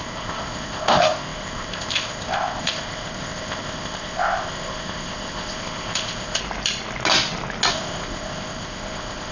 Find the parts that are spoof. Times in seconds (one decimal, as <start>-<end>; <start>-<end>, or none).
0.0-6.4; 7.7-9.3